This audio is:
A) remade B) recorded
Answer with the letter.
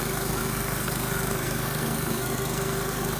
A